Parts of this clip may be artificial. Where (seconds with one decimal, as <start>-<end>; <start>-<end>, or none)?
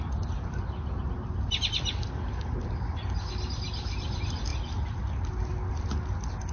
none